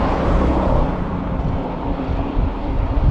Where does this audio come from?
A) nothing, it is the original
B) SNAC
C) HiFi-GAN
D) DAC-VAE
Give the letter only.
A